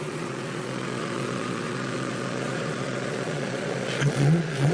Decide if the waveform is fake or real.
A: fake